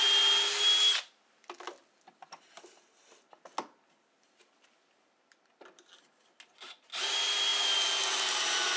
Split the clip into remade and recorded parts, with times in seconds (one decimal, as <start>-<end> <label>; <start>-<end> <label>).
0.0-8.8 recorded